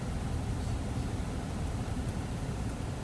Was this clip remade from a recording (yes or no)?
yes